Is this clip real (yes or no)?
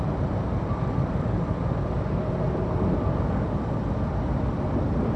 no